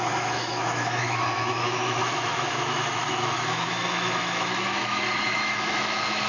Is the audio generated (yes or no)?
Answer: yes